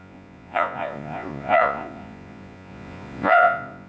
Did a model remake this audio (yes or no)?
yes